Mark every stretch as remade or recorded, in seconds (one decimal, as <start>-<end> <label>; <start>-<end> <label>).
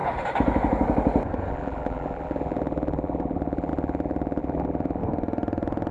0.0-1.5 recorded; 1.5-5.0 remade; 5.0-5.9 recorded